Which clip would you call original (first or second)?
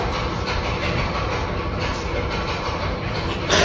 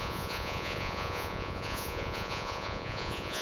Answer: first